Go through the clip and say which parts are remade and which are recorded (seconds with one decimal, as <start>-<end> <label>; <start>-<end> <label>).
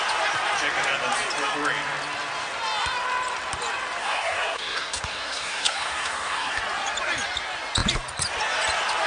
0.0-4.0 recorded; 4.0-6.6 remade; 6.6-9.1 recorded